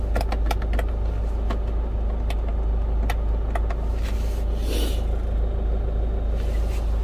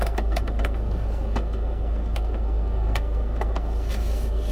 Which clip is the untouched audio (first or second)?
first